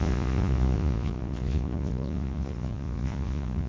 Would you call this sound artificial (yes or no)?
yes